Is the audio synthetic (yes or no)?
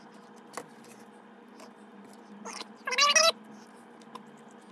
no